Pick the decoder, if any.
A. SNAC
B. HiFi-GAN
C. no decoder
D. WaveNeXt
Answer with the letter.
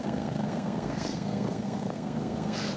A